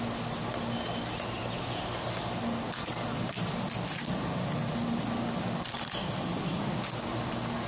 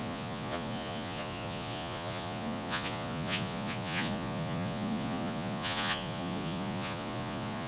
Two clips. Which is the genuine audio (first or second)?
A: first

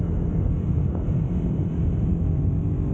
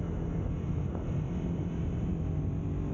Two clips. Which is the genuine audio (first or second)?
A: second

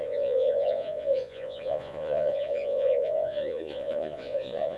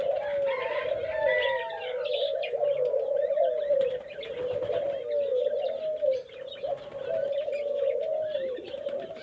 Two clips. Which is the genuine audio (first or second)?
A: second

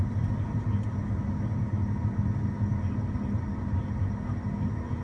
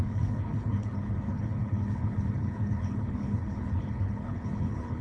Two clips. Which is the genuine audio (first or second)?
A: first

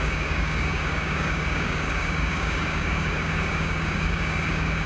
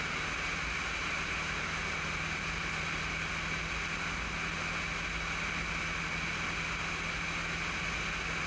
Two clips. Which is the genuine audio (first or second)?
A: second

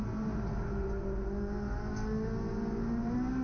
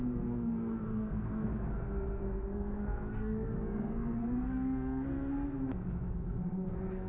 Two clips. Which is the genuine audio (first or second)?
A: first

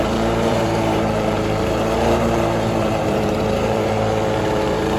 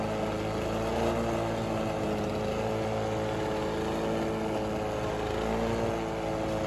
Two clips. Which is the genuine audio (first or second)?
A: second